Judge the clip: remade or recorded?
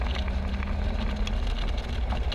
recorded